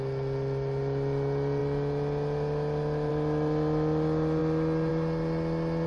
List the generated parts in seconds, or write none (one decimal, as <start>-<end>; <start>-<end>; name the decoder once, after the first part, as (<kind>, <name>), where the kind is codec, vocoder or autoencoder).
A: none